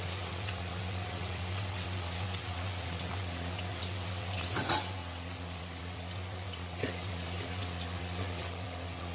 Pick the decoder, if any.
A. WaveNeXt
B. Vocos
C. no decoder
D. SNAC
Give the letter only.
A